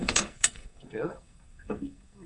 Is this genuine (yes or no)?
no